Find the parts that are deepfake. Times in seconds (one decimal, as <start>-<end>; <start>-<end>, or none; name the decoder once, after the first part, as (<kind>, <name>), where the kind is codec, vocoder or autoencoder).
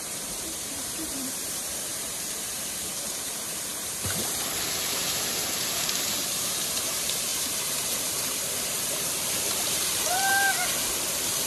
0.0-11.5 (vocoder, BigVGAN v2)